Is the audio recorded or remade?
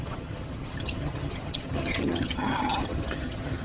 remade